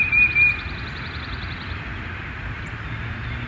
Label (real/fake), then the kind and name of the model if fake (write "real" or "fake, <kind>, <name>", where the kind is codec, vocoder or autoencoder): real